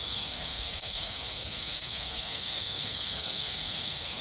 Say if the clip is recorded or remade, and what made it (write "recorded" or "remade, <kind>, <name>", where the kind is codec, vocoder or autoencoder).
remade, codec, SNAC